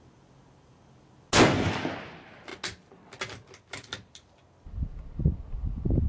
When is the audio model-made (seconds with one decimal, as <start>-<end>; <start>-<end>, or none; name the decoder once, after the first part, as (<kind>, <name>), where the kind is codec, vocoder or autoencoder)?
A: none